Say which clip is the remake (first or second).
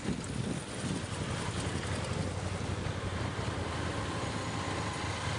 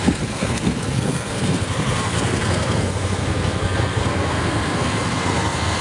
second